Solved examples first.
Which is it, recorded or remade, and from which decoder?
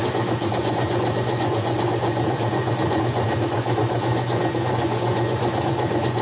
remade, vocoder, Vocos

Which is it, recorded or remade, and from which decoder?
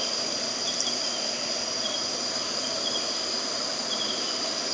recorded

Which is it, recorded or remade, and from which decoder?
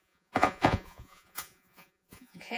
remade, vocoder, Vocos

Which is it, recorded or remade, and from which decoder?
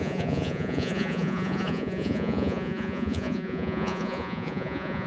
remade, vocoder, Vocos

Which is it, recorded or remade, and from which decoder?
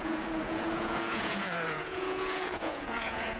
remade, vocoder, Vocos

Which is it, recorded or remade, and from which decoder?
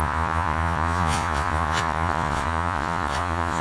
remade, vocoder, Vocos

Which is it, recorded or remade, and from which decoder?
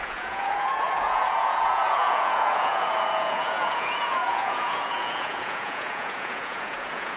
remade, vocoder, Vocos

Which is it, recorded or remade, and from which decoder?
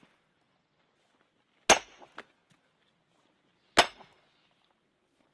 recorded